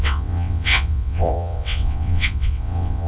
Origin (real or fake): fake